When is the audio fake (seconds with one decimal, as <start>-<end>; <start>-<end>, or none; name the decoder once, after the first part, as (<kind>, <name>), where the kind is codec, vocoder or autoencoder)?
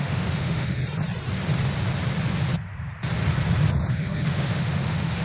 0.0-0.8 (autoencoder, DAC-VAE); 3.9-5.2